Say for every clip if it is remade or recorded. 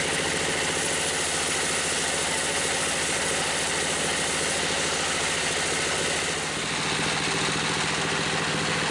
recorded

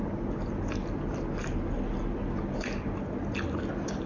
recorded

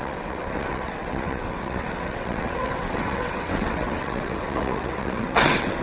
remade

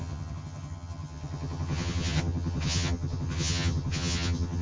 remade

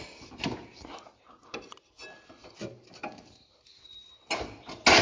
recorded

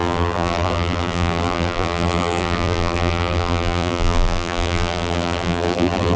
remade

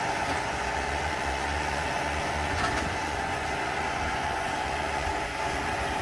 remade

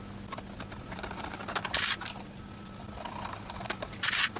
recorded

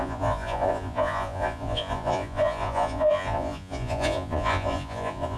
remade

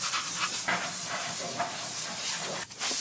recorded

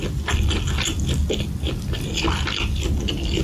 recorded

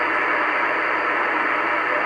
recorded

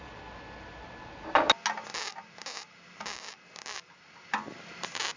recorded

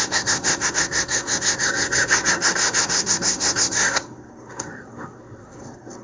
remade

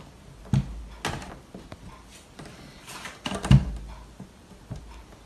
recorded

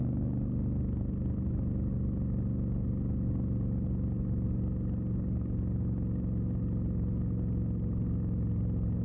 recorded